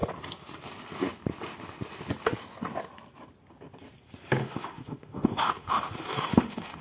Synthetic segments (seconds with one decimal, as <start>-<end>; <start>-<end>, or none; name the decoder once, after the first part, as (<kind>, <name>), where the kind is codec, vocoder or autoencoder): 4.4-6.8 (autoencoder, DAC-VAE)